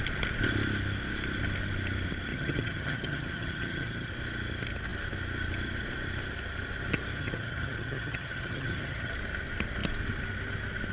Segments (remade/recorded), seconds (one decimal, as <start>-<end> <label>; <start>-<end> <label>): 0.0-2.3 recorded; 2.3-4.1 remade; 4.1-7.2 recorded; 7.2-9.1 remade; 9.1-10.9 recorded